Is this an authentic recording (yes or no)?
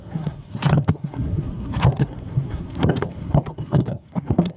no